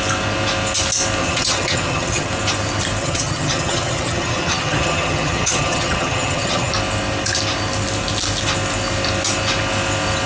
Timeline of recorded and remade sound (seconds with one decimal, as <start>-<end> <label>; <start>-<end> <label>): 0.0-1.2 recorded; 1.2-2.3 remade; 2.3-3.0 recorded; 3.0-6.7 remade; 6.7-10.3 recorded